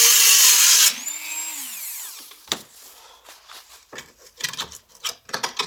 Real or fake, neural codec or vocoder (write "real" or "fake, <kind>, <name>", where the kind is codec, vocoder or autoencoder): real